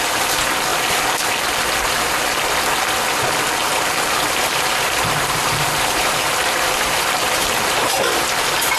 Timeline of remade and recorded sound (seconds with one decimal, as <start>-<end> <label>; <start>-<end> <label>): 0.0-3.6 recorded; 3.6-8.0 remade; 8.0-8.8 recorded